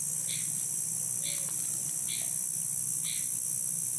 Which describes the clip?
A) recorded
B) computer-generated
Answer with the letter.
A